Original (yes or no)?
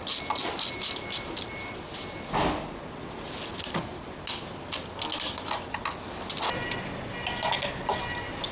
yes